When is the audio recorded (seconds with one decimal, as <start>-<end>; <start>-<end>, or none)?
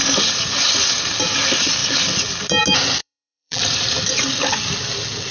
0.0-3.0; 3.6-5.3